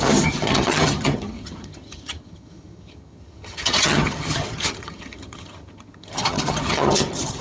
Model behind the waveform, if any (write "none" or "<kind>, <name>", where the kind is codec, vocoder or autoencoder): vocoder, HiFi-GAN